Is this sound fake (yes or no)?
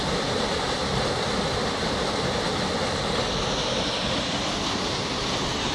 no